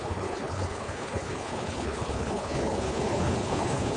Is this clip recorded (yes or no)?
no